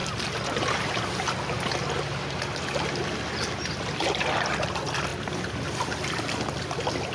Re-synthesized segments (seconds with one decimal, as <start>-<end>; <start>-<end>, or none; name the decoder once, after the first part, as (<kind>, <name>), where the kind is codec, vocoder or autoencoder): none